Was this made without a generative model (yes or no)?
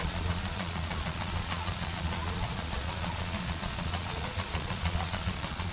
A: no